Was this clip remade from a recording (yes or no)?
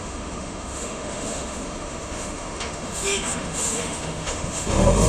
yes